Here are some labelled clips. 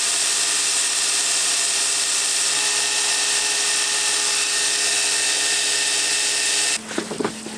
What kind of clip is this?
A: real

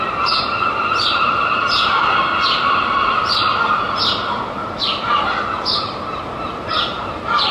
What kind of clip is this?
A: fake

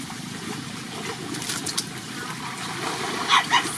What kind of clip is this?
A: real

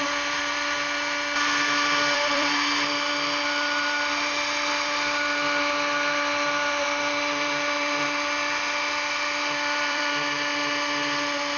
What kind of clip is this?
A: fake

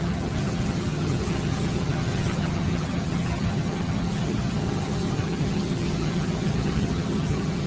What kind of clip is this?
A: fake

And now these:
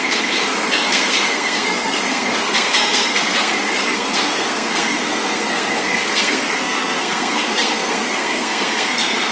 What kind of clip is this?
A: fake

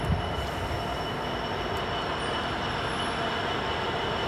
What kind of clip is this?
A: real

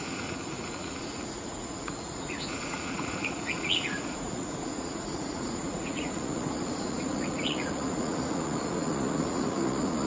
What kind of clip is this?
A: fake